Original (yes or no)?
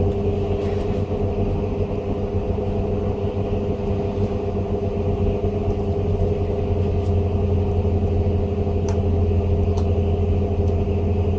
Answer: yes